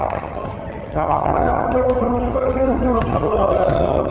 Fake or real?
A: fake